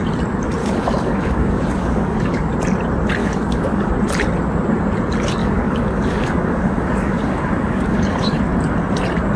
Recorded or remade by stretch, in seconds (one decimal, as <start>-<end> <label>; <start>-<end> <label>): 0.0-0.6 recorded; 0.6-2.5 remade; 2.5-3.2 recorded; 3.2-3.9 remade; 3.9-5.4 recorded; 5.4-8.4 remade; 8.4-9.4 recorded